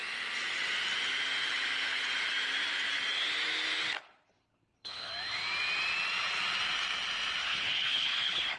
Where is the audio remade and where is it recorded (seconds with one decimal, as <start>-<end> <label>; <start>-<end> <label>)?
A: 0.0-4.0 recorded; 4.0-5.1 remade; 5.1-7.4 recorded; 7.4-8.6 remade